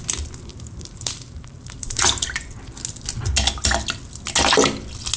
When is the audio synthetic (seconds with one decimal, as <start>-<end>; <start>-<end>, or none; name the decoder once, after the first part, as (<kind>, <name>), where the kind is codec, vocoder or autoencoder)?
0.5-2.0 (vocoder, BigVGAN v2)

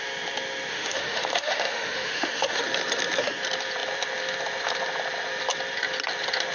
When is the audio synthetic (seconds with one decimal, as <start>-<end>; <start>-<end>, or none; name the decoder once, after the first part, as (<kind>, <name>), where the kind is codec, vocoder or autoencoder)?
0.7-2.6 (autoencoder, DAC-VAE)

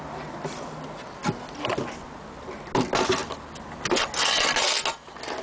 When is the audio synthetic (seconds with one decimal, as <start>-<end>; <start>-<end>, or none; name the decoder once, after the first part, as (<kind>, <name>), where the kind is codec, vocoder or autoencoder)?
none